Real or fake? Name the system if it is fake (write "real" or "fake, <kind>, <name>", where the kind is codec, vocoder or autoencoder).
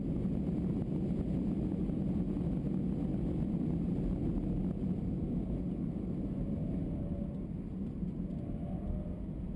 real